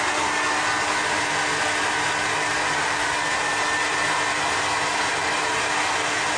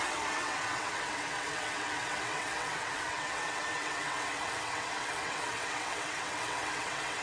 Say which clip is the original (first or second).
first